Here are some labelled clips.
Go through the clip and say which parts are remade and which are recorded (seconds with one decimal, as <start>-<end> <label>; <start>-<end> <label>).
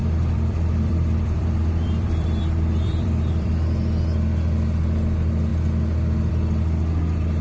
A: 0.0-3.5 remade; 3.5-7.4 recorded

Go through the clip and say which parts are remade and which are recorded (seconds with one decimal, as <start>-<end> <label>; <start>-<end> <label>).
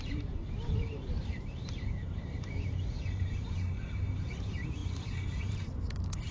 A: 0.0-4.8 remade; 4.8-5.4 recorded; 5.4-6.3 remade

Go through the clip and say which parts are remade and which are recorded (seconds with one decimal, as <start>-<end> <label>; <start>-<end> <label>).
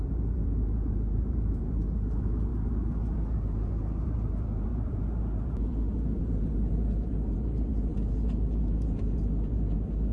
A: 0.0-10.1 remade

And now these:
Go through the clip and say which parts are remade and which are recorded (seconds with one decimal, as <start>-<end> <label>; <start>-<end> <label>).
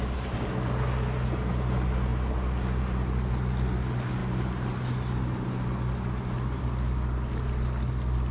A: 0.0-8.3 recorded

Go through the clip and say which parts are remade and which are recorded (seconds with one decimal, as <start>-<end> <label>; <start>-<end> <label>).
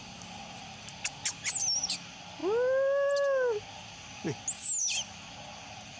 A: 0.0-6.0 recorded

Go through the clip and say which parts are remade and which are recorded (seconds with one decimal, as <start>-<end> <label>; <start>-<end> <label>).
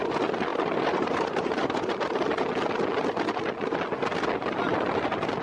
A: 0.0-0.5 recorded; 0.5-2.0 remade; 2.0-5.4 recorded